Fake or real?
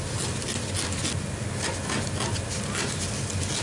real